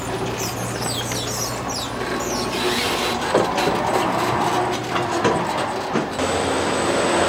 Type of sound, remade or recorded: recorded